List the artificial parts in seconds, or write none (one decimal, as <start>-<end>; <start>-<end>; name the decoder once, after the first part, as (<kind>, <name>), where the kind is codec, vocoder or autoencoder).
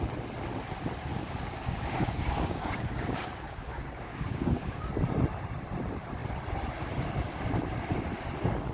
1.1-4.9 (codec, DAC)